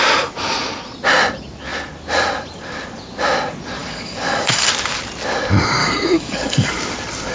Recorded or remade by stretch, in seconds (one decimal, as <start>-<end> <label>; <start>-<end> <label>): 0.0-3.8 recorded; 3.8-4.7 remade; 4.7-5.8 recorded; 5.8-6.7 remade; 6.7-7.3 recorded